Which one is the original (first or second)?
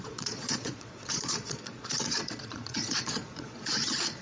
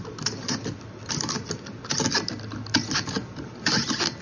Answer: second